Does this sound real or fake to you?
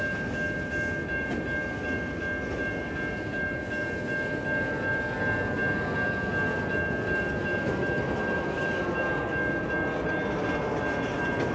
real